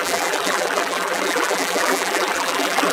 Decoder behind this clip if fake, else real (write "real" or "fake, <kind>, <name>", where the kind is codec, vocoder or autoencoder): fake, vocoder, BigVGAN v2